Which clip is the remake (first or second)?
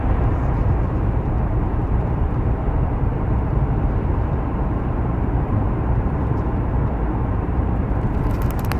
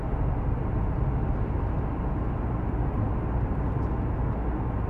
first